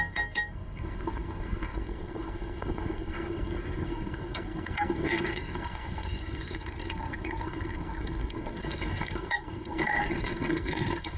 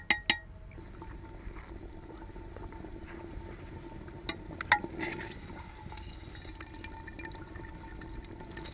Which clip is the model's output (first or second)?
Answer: first